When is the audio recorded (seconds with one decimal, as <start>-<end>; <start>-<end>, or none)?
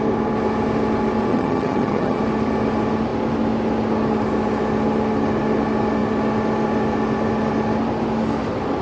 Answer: 0.0-1.3; 2.2-8.8